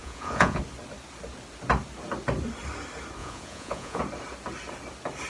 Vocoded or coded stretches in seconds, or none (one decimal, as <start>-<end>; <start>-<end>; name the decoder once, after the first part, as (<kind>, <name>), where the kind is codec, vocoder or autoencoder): 0.0-0.6 (vocoder, Vocos); 3.2-4.0